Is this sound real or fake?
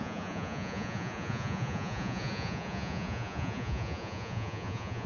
fake